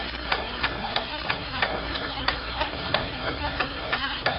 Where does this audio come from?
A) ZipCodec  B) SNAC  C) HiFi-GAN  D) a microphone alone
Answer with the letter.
B